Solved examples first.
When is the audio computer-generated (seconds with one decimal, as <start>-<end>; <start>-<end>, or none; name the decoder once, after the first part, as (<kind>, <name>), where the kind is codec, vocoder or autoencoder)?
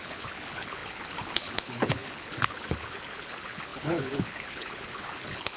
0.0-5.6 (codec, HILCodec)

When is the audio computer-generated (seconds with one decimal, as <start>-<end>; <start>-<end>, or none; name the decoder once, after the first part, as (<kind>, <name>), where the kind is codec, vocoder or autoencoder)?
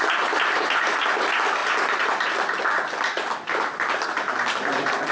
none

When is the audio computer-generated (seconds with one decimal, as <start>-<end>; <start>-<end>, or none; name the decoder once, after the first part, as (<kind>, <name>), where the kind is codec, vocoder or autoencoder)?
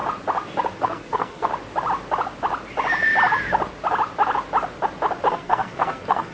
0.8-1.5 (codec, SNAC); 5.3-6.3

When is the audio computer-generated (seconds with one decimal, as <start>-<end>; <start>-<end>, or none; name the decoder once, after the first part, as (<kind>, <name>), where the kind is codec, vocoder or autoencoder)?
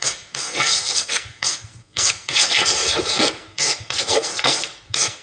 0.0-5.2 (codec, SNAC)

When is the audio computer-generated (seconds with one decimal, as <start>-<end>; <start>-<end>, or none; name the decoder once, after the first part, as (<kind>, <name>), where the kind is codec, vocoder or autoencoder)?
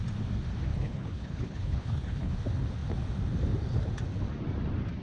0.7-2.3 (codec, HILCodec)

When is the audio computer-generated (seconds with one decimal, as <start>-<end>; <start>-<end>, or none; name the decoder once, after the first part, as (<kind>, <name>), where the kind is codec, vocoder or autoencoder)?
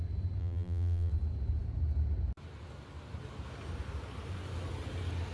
0.4-1.1 (vocoder, BigVGAN v2)